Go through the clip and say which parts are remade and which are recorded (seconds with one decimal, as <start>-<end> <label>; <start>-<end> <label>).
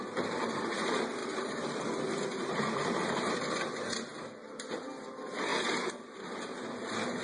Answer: 0.0-5.5 remade; 5.5-6.4 recorded; 6.4-7.2 remade